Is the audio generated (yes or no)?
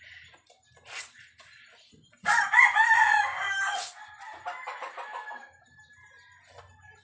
no